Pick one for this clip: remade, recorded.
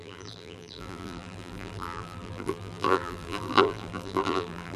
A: remade